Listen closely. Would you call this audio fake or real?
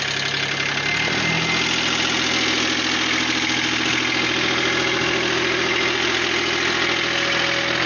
real